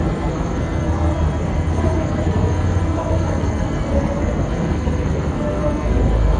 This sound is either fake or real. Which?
fake